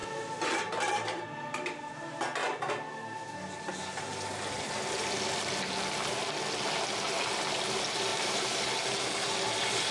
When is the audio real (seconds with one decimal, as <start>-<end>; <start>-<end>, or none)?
0.0-8.1; 8.6-9.9